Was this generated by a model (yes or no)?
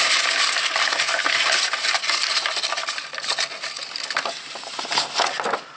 no